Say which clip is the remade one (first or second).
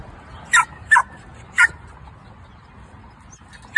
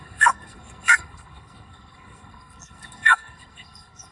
second